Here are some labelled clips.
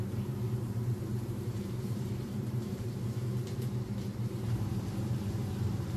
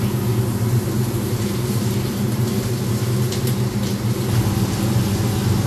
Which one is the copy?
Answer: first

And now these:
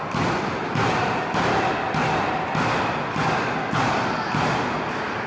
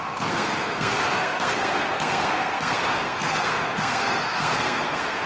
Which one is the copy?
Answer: second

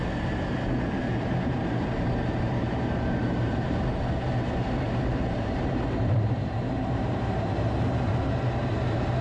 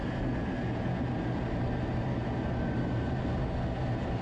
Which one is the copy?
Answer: first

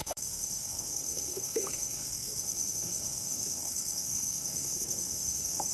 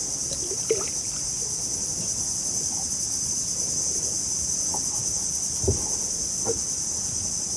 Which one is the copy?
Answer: first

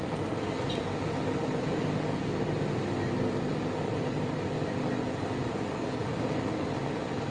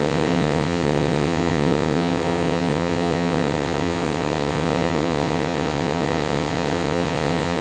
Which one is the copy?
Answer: second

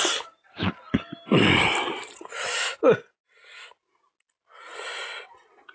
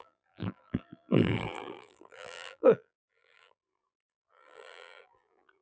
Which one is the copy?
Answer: second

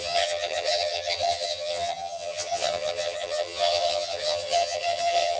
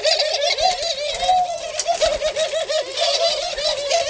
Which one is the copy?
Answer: first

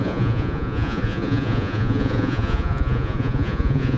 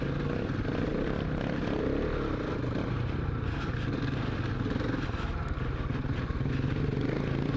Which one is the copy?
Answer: first